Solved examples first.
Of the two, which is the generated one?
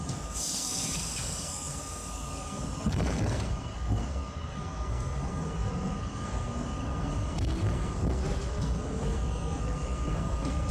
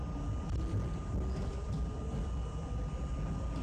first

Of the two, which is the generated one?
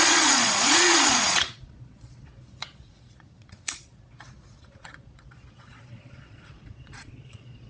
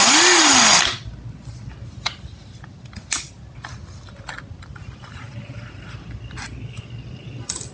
first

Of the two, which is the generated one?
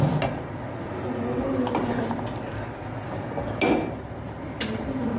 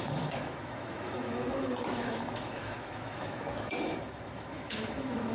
second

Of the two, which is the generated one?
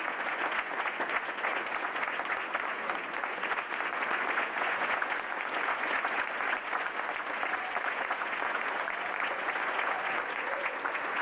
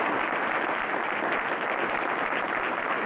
first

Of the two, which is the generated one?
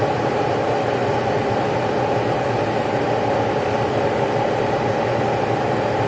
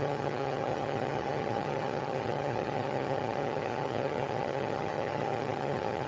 second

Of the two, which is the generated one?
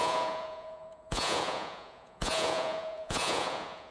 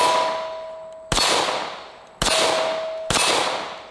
first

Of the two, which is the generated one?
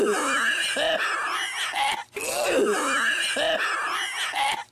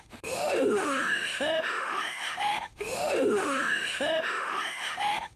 second